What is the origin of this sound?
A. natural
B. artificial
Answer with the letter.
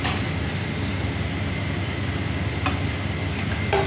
A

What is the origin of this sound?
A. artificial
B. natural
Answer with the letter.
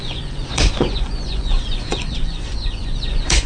A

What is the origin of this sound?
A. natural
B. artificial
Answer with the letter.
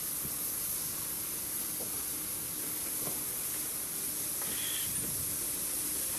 A